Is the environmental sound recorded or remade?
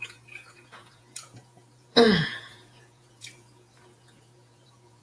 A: remade